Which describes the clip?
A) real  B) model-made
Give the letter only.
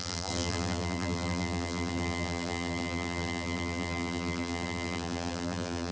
B